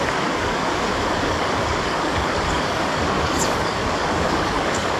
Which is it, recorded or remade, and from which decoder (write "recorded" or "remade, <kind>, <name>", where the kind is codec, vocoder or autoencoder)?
remade, codec, DAC